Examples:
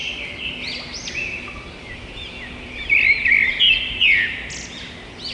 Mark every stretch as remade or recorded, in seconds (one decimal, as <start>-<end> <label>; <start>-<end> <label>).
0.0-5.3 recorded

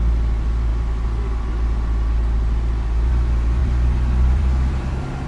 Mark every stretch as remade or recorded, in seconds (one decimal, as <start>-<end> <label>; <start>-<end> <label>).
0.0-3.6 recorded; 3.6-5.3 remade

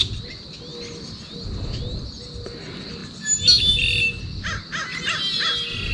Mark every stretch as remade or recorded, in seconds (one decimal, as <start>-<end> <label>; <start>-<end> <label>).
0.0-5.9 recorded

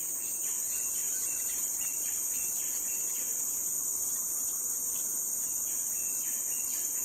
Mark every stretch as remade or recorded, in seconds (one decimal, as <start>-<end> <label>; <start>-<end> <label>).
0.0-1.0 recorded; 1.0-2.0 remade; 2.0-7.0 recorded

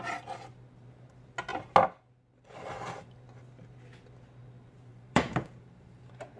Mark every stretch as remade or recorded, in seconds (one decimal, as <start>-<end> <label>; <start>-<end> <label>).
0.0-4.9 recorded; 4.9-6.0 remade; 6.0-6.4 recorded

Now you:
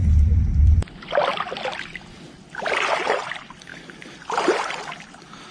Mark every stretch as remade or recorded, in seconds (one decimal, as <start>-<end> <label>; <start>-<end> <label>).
0.0-5.5 remade

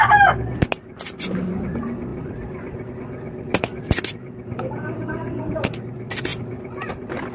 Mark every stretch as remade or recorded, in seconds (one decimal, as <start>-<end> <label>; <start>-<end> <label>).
0.0-2.1 recorded; 2.1-2.9 remade; 2.9-6.3 recorded; 6.3-7.3 remade

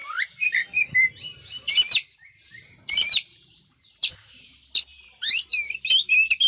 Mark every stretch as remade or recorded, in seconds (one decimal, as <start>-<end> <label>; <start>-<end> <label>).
0.0-0.6 remade; 0.6-1.3 recorded; 1.3-4.5 remade; 4.5-4.9 recorded; 4.9-5.5 remade; 5.5-6.5 recorded